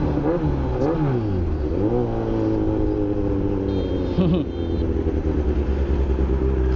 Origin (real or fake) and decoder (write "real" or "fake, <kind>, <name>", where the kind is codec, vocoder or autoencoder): real